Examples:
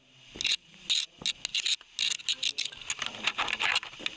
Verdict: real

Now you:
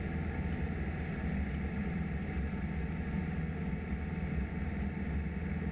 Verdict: real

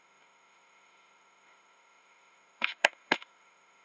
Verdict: fake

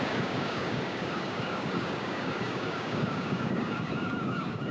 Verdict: fake